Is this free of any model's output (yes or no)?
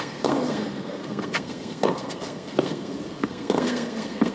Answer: no